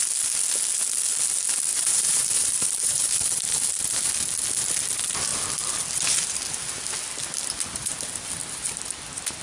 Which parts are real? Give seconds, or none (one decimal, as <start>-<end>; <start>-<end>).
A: 0.0-1.7; 4.1-9.4